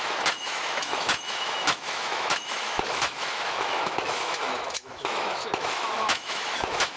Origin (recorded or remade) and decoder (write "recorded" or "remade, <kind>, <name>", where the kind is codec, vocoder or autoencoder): remade, autoencoder, DAC-VAE